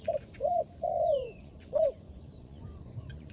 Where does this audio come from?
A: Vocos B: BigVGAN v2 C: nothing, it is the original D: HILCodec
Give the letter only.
A